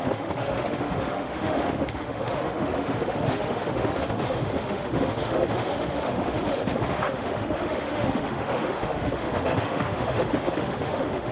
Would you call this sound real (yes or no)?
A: no